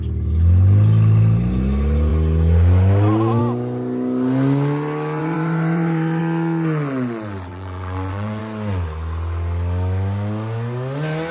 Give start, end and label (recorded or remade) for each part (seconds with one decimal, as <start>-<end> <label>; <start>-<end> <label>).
0.0-5.2 recorded; 5.2-6.2 remade; 6.2-7.5 recorded; 7.5-8.4 remade; 8.4-11.3 recorded

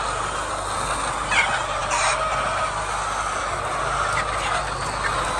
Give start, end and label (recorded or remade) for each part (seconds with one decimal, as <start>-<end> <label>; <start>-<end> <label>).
0.0-5.4 recorded

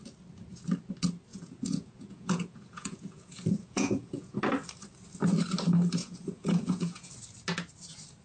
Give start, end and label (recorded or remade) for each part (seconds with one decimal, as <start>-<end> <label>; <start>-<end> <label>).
0.0-1.3 recorded; 1.3-4.4 remade; 4.4-6.0 recorded; 6.0-7.1 remade; 7.1-8.2 recorded

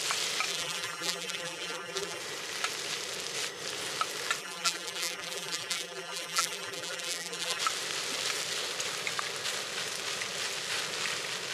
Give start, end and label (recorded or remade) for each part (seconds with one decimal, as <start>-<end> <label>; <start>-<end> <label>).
0.0-0.5 recorded; 0.5-2.2 remade; 2.2-4.4 recorded; 4.4-7.6 remade; 7.6-11.5 recorded